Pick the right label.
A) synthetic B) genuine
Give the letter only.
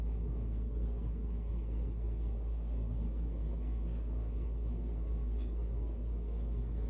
A